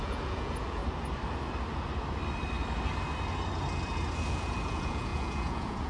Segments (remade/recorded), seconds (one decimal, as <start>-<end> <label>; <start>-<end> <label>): 0.0-0.8 remade; 0.8-4.3 recorded; 4.3-5.9 remade